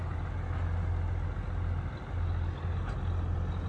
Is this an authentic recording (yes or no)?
yes